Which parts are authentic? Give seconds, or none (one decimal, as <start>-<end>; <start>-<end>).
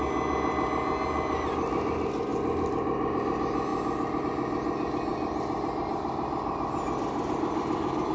0.0-8.1